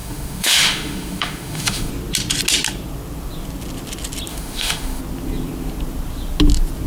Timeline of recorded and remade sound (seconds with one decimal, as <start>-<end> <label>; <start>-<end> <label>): 0.0-1.9 remade; 1.9-4.3 recorded; 4.3-5.0 remade; 5.0-6.9 recorded